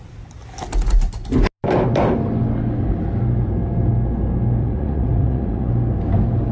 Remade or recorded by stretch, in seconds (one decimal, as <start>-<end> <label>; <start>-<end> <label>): 0.0-4.6 recorded; 4.6-5.7 remade; 5.7-6.5 recorded